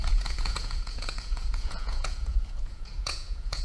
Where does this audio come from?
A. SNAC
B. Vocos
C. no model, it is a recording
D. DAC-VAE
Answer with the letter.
B